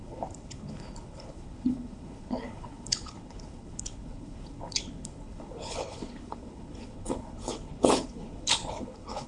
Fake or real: fake